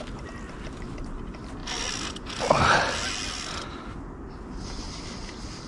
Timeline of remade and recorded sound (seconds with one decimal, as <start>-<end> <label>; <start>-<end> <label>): 0.0-5.7 recorded